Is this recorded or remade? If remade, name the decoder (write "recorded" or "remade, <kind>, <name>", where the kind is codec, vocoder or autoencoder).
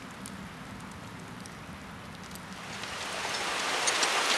recorded